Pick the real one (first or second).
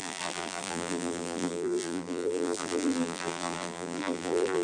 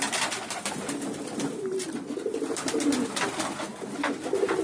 second